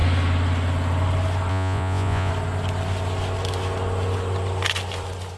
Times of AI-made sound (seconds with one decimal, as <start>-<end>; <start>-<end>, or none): 1.5-2.3